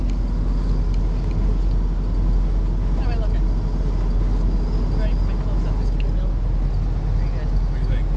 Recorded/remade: recorded